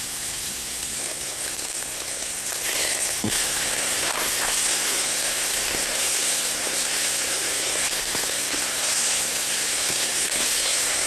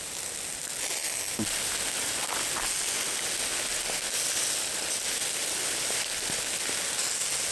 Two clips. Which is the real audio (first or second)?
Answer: second